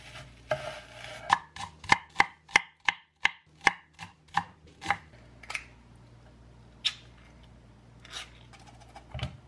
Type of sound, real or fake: real